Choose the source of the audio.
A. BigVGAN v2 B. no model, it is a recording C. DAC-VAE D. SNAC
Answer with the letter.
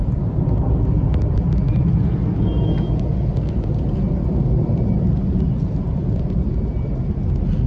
B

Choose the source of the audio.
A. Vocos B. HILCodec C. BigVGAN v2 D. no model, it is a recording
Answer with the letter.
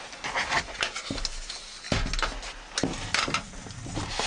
D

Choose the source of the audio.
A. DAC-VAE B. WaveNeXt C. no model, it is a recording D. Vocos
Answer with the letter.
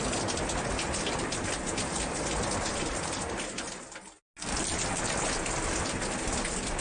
C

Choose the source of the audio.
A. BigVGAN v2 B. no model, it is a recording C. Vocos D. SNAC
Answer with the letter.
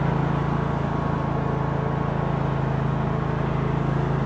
B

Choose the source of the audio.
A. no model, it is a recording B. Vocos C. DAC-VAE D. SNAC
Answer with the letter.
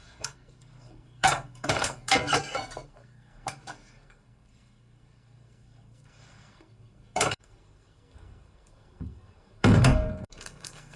D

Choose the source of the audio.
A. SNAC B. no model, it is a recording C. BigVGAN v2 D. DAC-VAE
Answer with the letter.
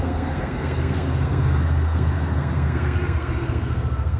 A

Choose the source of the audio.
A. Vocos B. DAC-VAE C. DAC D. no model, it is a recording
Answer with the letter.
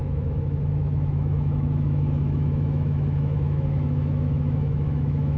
B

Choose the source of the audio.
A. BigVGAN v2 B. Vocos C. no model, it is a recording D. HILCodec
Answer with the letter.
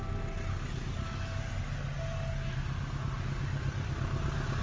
C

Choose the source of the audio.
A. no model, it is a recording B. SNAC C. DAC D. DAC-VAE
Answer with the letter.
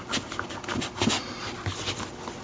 A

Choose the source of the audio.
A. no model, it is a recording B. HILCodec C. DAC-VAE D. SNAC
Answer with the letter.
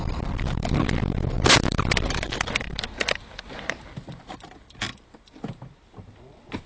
A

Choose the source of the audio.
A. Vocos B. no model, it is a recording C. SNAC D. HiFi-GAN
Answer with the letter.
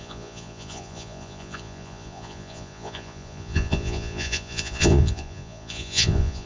A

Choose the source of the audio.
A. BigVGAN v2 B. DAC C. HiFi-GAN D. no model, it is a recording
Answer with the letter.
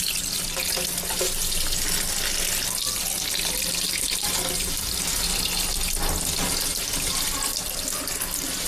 D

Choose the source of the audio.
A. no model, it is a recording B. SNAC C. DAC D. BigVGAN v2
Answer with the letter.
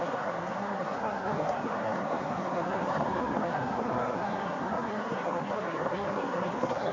B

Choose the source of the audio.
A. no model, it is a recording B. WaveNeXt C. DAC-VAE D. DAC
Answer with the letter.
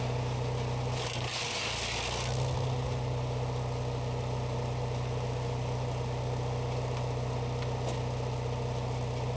A